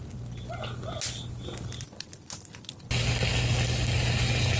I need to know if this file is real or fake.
real